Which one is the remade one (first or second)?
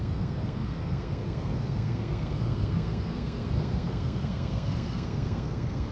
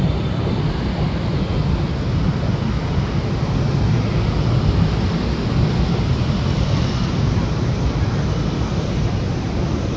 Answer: first